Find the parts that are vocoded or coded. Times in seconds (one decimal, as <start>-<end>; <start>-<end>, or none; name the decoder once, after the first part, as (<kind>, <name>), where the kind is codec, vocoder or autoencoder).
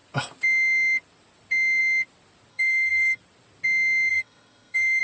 2.5-3.2 (codec, SNAC); 4.1-5.0